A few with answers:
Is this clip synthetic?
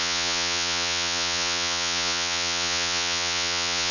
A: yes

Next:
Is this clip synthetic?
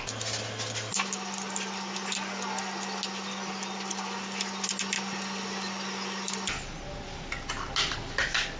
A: no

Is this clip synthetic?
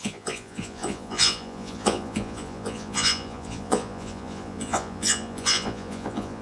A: yes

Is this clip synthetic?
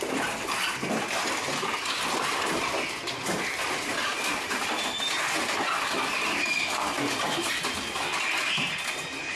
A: no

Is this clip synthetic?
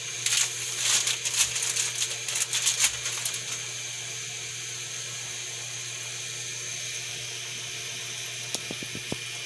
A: no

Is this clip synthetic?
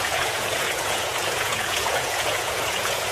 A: yes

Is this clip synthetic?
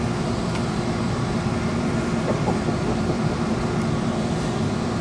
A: no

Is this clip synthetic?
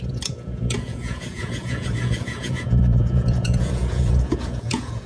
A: yes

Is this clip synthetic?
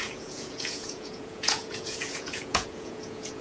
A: yes